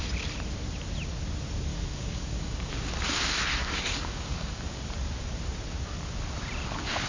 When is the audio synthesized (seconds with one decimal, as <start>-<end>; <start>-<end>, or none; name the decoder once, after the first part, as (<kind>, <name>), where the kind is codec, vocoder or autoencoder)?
1.7-2.7 (codec, DAC); 3.6-4.8